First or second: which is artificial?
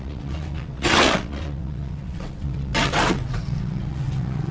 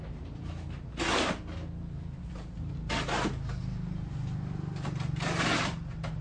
first